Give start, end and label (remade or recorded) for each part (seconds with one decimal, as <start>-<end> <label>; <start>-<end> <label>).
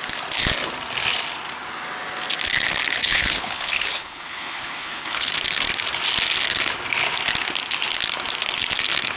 0.0-3.0 recorded; 3.0-5.3 remade; 5.3-9.2 recorded